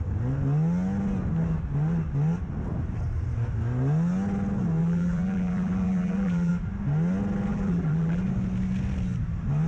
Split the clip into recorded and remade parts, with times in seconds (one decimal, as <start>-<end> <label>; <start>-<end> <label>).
0.0-4.8 recorded; 4.8-6.5 remade; 6.5-7.5 recorded; 7.5-8.2 remade; 8.2-9.7 recorded